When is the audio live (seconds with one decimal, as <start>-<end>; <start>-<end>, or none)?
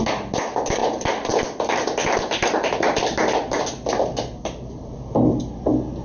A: 0.0-6.0